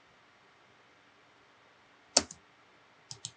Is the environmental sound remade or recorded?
recorded